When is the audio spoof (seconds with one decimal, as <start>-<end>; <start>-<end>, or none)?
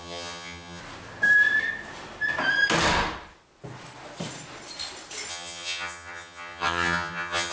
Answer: 0.0-0.8; 5.3-7.5